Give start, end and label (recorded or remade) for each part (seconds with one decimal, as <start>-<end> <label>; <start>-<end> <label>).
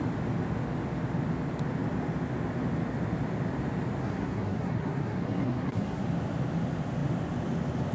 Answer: 0.0-4.0 recorded; 4.0-6.0 remade; 6.0-7.9 recorded